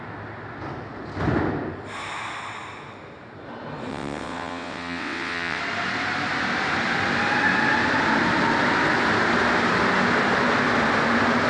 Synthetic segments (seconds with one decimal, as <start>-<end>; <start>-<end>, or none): 3.9-5.6